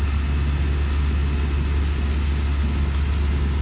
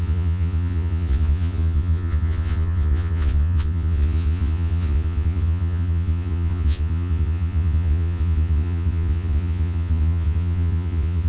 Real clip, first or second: first